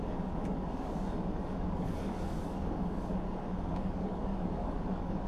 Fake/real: fake